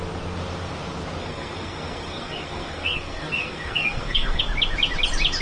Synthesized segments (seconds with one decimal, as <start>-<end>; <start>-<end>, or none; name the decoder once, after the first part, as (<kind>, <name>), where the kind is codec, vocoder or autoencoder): 1.2-4.4 (codec, SNAC)